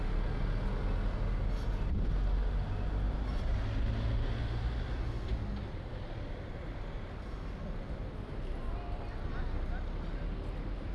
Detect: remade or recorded recorded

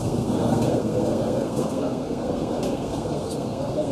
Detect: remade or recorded remade